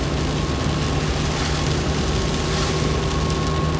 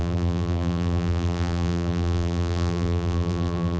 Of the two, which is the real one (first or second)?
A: first